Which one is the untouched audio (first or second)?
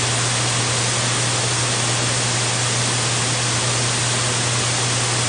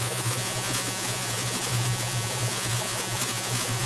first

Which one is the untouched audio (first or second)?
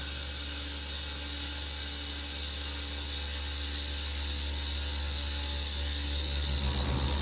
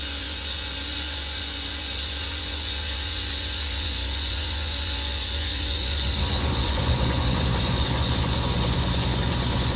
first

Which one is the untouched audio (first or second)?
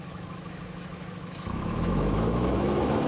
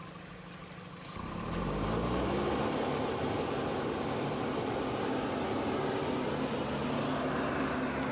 second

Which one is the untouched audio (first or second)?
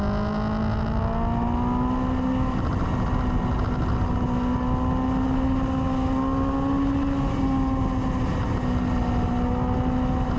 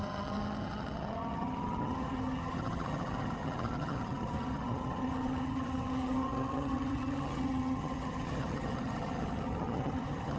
first